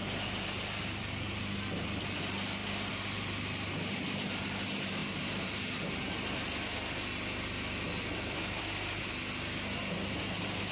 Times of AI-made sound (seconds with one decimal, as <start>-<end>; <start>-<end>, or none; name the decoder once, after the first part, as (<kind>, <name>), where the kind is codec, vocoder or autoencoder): none